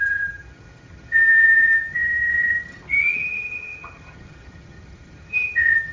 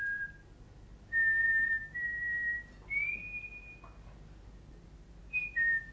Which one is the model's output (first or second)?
first